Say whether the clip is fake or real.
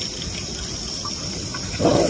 real